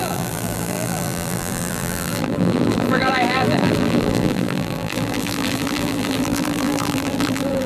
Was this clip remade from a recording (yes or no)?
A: yes